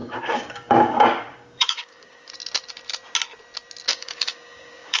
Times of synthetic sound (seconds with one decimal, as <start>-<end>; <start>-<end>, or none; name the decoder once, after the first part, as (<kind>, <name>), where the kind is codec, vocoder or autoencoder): 0.0-2.3 (codec, DAC); 3.9-5.0